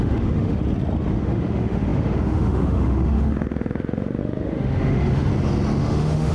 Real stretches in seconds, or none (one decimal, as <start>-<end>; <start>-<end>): 0.6-1.1; 5.3-5.8